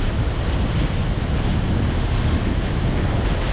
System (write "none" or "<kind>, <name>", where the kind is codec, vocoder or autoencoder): none